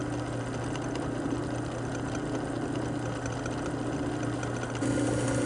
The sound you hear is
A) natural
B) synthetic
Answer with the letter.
A